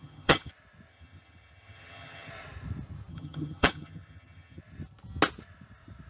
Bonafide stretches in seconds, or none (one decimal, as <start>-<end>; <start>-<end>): 0.5-0.9; 2.3-3.1; 4.6-6.1